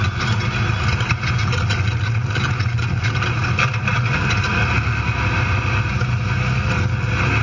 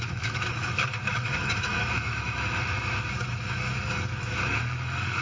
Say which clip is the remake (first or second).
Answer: second